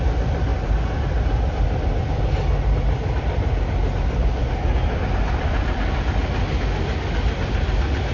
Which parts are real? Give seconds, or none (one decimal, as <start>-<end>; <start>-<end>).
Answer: 0.0-8.1